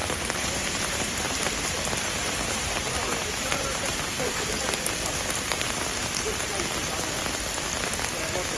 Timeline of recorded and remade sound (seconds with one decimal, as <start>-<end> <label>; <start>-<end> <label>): 0.0-4.1 remade; 4.1-8.6 recorded